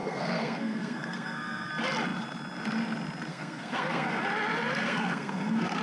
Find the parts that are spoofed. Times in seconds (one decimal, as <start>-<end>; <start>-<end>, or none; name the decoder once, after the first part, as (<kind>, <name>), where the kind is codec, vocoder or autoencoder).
0.0-1.7 (codec, SNAC); 3.3-4.2; 4.8-5.8